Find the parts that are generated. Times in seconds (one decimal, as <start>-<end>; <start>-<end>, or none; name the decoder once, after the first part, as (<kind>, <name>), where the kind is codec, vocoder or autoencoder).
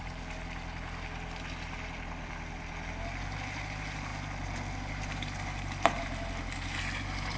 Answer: none